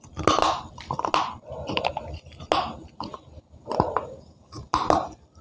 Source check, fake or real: real